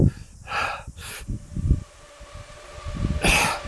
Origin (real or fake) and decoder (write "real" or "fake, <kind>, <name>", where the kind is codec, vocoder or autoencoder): real